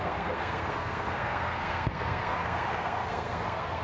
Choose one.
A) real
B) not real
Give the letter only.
B